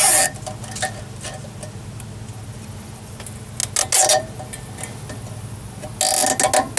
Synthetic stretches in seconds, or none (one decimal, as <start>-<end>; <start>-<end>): none